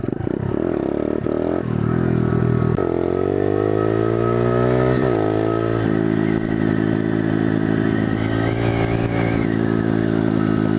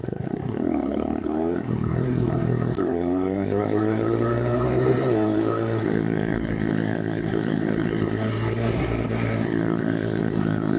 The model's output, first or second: second